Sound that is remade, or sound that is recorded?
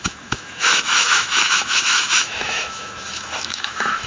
remade